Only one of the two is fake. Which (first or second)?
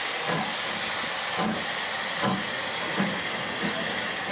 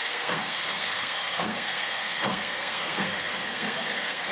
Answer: second